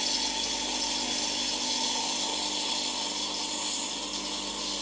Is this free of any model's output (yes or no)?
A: yes